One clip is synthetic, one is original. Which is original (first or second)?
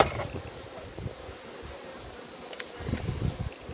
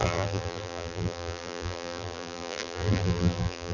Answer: first